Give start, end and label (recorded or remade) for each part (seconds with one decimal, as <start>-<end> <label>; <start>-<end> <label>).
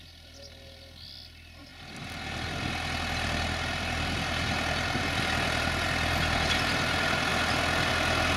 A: 0.0-8.4 recorded